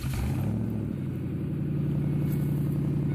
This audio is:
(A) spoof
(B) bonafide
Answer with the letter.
B